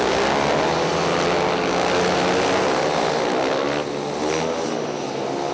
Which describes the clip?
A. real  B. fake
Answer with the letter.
A